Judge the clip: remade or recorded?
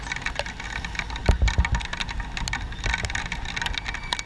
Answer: recorded